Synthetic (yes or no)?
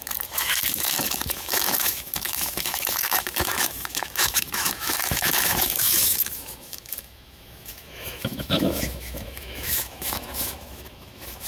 yes